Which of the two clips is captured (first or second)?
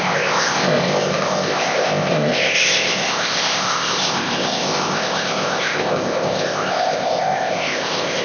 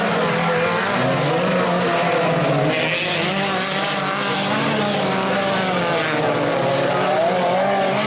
second